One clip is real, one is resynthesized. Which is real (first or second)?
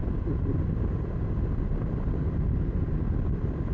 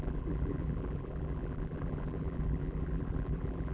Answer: first